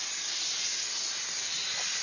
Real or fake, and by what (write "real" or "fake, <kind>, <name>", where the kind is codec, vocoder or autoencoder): real